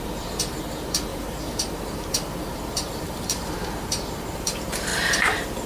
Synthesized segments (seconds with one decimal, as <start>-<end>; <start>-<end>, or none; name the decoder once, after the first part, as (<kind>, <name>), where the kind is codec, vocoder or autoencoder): 0.0-4.9 (vocoder, BigVGAN v2)